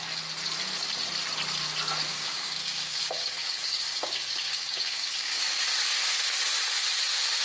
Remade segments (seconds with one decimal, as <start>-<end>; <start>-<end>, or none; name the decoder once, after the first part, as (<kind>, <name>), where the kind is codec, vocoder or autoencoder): 2.1-5.6 (codec, DAC)